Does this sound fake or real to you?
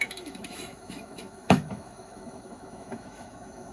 fake